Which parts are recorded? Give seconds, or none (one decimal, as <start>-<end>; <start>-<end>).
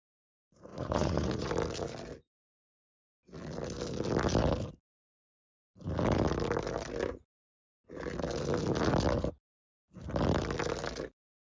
0.0-0.7; 1.5-11.5